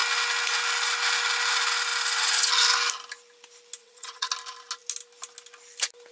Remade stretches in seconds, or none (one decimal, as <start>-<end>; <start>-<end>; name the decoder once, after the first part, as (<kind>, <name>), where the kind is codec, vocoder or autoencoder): 3.8-4.3 (vocoder, WaveNeXt)